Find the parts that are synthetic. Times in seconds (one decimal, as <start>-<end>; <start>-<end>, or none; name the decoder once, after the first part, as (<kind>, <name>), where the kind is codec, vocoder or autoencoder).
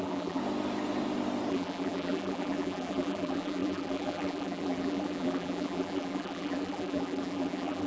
0.0-0.4 (vocoder, BigVGAN v2); 1.5-7.9